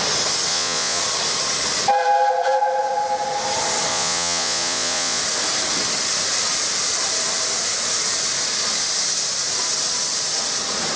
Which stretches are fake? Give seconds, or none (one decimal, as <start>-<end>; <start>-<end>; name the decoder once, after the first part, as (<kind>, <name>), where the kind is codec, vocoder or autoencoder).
0.5-1.0 (vocoder, Vocos); 3.9-5.2